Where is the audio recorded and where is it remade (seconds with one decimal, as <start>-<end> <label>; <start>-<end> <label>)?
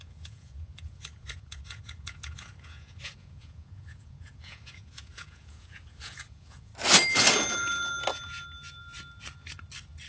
0.0-6.7 remade; 6.7-10.1 recorded